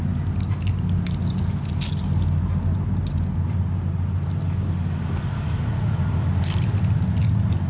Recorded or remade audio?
recorded